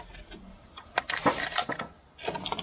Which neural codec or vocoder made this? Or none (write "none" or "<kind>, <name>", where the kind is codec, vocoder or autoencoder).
none